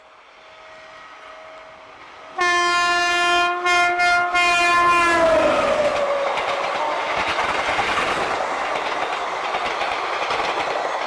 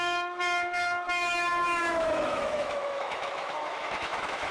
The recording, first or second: first